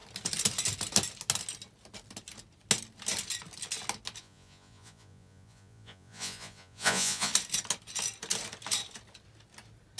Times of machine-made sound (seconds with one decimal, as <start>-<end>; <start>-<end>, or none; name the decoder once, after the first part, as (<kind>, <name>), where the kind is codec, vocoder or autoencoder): 4.2-7.3 (vocoder, Vocos)